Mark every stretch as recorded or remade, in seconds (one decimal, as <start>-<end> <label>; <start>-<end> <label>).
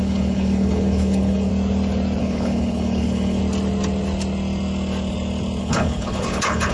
0.0-1.5 remade; 1.5-2.2 recorded; 2.2-3.4 remade; 3.4-5.6 recorded; 5.6-6.7 remade